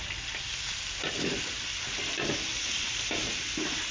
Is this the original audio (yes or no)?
yes